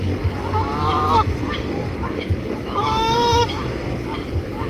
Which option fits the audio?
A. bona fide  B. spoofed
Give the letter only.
B